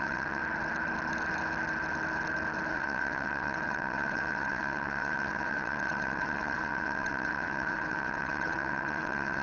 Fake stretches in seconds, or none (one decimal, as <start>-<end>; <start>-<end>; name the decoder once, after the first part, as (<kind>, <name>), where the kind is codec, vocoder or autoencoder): 0.0-0.4 (vocoder, WaveNeXt); 2.7-9.4

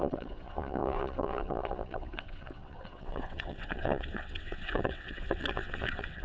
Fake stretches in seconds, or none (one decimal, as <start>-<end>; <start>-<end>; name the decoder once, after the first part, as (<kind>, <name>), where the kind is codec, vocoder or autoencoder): 0.0-6.2 (vocoder, WaveNeXt)

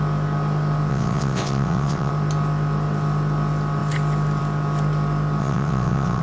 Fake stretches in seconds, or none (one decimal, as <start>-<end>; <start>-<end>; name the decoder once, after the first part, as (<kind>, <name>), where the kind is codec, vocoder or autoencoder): 0.9-2.1 (vocoder, WaveNeXt); 5.4-6.2

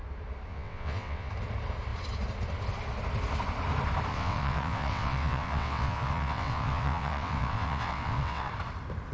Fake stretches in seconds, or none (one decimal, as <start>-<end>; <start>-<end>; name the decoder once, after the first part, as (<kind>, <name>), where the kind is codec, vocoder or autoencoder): 0.5-1.3 (vocoder, WaveNeXt); 4.1-8.5

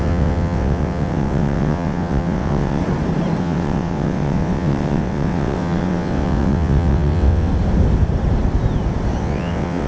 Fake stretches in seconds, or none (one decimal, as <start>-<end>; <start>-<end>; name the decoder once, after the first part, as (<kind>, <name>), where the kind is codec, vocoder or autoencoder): 0.0-2.8 (vocoder, WaveNeXt); 3.4-7.5; 9.2-9.9

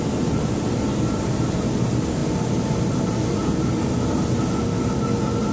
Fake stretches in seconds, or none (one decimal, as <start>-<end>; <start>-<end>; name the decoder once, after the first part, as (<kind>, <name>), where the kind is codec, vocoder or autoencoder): none